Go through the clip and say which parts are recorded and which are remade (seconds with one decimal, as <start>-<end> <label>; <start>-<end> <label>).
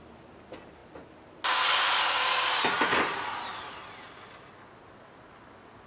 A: 0.0-5.9 recorded